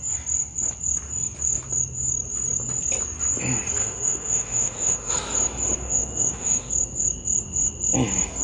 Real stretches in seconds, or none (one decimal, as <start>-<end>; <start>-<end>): 0.0-3.8; 5.1-5.8; 6.7-8.4